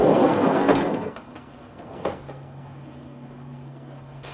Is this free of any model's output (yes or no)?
no